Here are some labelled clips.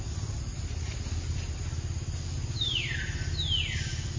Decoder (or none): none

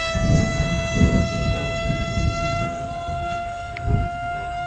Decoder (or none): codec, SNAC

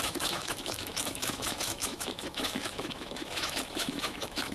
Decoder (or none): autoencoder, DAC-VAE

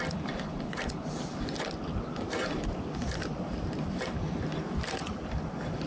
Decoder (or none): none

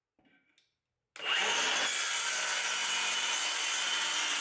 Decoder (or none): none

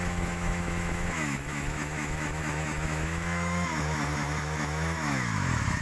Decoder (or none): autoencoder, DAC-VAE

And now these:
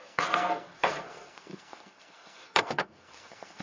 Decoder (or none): codec, SNAC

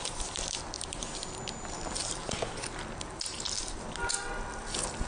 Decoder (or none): none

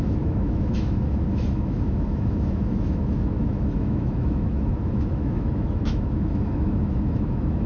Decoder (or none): autoencoder, DAC-VAE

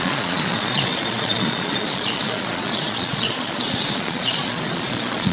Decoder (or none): vocoder, Vocos